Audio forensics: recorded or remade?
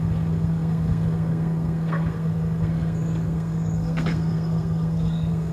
remade